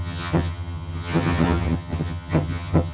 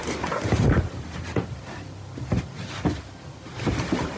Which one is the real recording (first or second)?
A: second